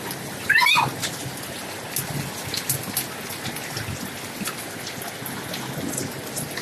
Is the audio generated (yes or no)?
no